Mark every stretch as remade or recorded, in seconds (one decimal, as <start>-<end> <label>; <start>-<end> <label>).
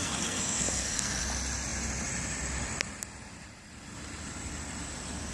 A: 0.0-1.2 remade; 1.2-5.3 recorded